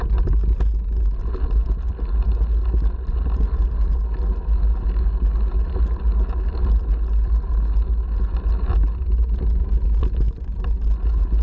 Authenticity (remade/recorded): recorded